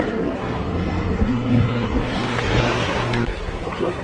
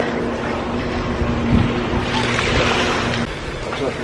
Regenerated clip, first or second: first